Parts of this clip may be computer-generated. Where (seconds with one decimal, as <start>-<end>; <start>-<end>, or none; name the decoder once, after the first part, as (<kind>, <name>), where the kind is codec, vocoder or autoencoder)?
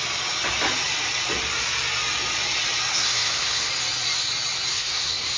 2.9-3.7 (codec, SNAC); 4.7-5.4